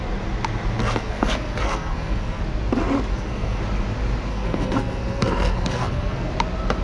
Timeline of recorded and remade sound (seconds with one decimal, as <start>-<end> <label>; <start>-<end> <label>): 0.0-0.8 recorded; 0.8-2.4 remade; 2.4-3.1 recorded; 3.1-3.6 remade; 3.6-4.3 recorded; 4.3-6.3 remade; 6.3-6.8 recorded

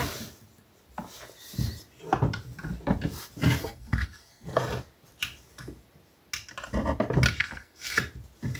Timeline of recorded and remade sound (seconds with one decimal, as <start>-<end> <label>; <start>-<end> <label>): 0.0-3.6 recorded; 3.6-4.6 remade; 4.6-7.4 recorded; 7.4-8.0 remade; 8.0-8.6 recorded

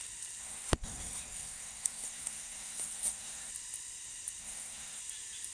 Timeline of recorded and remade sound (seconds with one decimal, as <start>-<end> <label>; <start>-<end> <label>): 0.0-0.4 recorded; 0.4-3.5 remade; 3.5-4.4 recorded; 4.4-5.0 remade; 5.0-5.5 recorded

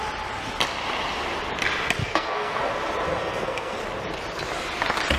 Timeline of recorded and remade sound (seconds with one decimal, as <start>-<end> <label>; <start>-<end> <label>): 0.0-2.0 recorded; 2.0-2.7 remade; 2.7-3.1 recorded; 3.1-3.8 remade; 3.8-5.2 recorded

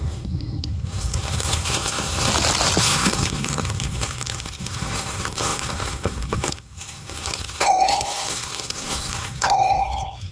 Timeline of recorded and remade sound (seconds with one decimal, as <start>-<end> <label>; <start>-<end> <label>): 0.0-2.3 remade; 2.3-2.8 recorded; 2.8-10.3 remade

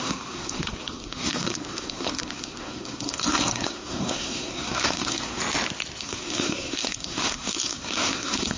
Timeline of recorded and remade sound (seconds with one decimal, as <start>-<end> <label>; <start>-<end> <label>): 0.0-5.4 remade; 5.4-6.0 recorded; 6.0-8.6 remade